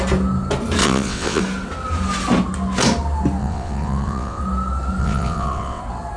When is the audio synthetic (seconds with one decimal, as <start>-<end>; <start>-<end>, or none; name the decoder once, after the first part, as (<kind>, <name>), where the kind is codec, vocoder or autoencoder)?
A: 0.8-1.4 (vocoder, WaveNeXt); 3.4-4.4; 5.0-5.8